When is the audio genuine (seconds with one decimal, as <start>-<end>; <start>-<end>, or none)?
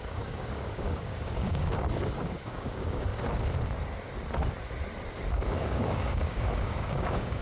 3.1-5.6